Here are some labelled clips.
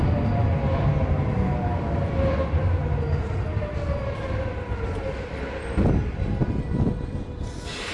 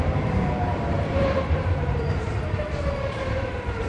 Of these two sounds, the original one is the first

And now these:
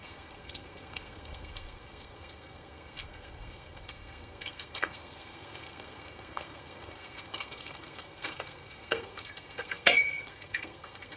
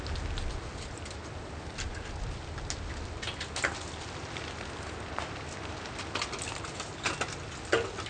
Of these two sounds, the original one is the second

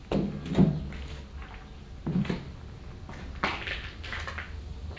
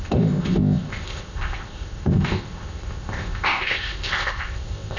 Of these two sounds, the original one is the first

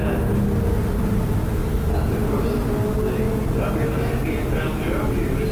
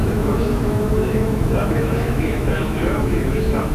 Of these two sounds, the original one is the first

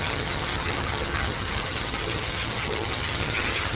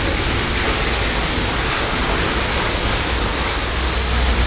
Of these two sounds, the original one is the second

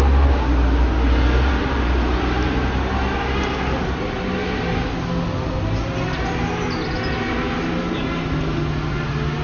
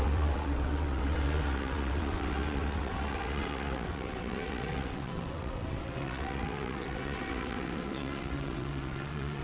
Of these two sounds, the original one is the first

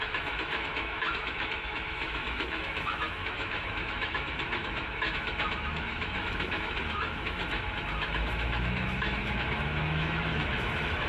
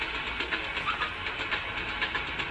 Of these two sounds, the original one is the second